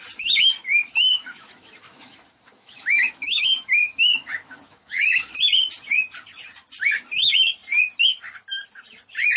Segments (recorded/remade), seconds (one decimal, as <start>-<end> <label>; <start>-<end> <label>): 0.0-0.7 recorded; 0.7-5.4 remade; 5.4-9.4 recorded